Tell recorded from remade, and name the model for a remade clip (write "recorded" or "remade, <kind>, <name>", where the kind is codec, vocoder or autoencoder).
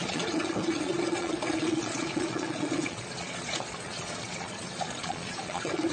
remade, vocoder, Vocos